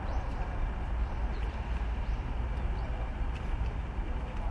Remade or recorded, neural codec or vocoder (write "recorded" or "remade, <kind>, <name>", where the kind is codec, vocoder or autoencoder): recorded